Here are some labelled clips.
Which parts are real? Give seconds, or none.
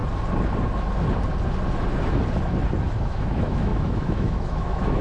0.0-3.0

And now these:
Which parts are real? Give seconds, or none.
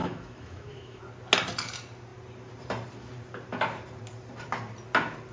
1.0-5.3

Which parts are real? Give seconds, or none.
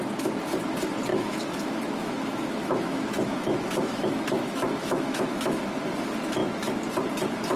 0.0-1.1; 5.7-7.6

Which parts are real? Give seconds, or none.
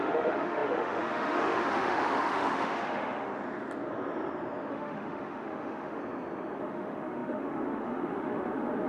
3.3-4.7; 6.0-6.6